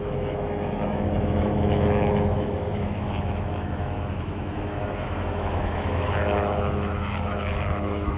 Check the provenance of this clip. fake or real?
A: fake